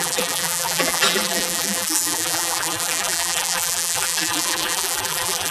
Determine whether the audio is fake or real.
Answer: fake